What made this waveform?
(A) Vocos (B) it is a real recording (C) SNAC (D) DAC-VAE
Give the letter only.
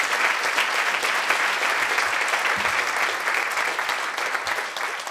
B